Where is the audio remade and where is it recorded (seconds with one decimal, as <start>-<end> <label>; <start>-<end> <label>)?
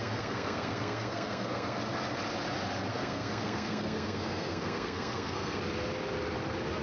0.0-1.8 remade; 1.8-2.9 recorded; 2.9-5.6 remade; 5.6-6.8 recorded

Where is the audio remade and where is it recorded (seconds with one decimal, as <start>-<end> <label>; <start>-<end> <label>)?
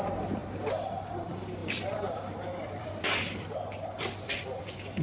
0.0-1.6 recorded; 1.6-4.6 remade; 4.6-5.0 recorded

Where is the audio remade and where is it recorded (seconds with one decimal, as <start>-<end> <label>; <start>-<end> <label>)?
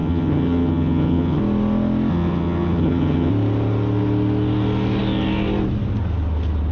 0.0-1.4 remade; 1.4-2.1 recorded; 2.1-3.3 remade; 3.3-6.7 recorded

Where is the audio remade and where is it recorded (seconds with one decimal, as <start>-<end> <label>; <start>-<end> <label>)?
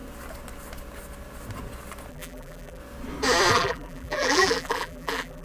0.0-2.1 recorded; 2.1-2.8 remade; 2.8-3.5 recorded; 3.5-5.4 remade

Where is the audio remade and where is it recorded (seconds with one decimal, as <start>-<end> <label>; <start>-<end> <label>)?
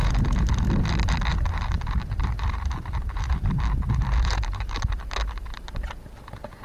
0.0-1.3 recorded; 1.3-5.0 remade; 5.0-6.6 recorded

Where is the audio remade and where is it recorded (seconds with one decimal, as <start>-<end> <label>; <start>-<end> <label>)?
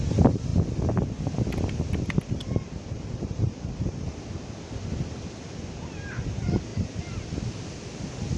0.0-8.4 recorded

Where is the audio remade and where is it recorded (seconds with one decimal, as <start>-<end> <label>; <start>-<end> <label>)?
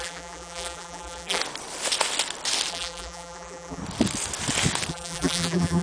0.0-1.4 remade; 1.4-2.7 recorded; 2.7-3.8 remade; 3.8-4.9 recorded; 4.9-5.8 remade